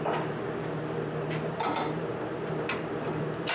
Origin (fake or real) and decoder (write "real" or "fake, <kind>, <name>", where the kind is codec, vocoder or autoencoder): fake, vocoder, BigVGAN v2